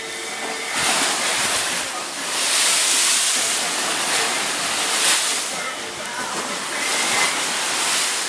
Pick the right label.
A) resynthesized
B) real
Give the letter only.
B